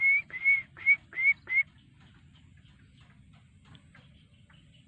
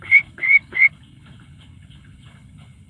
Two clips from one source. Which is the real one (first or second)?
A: first